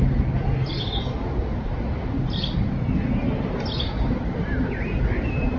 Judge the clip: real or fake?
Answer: real